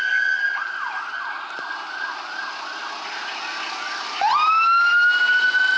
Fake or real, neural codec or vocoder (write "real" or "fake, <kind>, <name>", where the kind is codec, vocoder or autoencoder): real